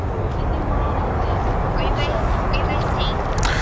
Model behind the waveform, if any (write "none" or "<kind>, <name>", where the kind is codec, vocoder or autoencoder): none